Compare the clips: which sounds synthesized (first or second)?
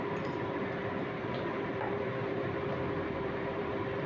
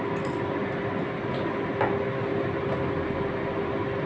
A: first